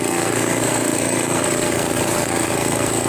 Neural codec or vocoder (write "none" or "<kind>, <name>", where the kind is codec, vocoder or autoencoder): codec, SNAC